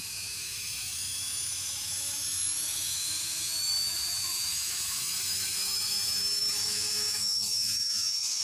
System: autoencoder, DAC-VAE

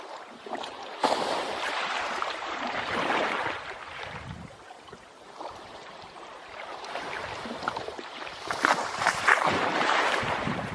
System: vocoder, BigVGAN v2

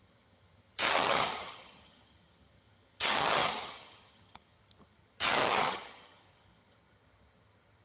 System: vocoder, HiFi-GAN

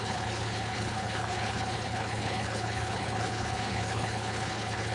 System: codec, HILCodec